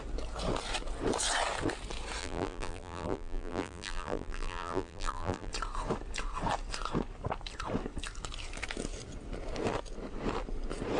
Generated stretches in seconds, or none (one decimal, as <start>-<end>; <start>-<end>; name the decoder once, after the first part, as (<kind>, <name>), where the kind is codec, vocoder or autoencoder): 2.2-5.5 (vocoder, BigVGAN v2)